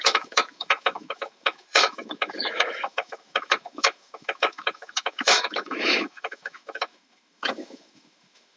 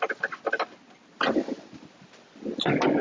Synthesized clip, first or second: first